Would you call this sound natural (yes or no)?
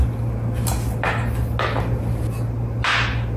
yes